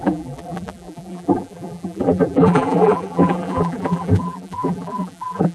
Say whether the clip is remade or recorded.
remade